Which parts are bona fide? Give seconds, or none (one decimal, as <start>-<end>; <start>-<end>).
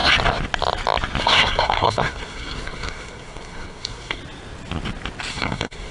0.0-1.2; 4.2-5.3